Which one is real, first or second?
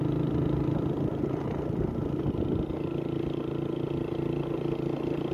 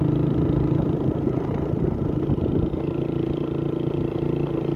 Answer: first